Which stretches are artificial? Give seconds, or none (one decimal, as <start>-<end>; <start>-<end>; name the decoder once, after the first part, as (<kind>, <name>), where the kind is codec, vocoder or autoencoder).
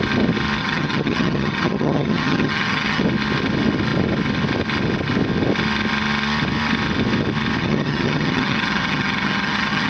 0.6-3.0 (vocoder, HiFi-GAN); 7.6-9.9